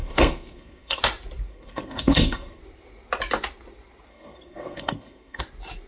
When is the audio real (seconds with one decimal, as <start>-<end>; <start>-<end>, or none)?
1.0-1.5; 2.6-4.1; 5.4-5.9